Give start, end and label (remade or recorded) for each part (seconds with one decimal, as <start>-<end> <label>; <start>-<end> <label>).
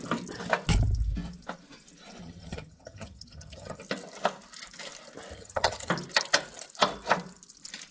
0.0-2.2 recorded; 2.2-3.8 remade; 3.8-5.3 recorded; 5.3-5.9 remade; 5.9-7.9 recorded